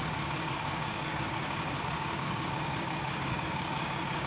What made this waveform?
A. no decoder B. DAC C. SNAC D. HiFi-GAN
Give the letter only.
B